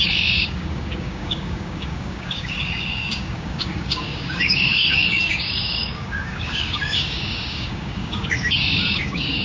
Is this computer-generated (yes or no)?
yes